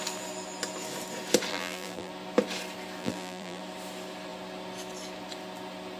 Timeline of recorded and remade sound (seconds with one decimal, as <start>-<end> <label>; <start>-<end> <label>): 0.0-1.5 recorded; 1.5-2.1 remade; 2.1-3.0 recorded; 3.0-3.6 remade; 3.6-6.0 recorded